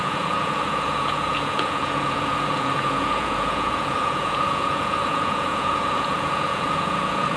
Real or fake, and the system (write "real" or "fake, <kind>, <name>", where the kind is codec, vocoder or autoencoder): fake, vocoder, Vocos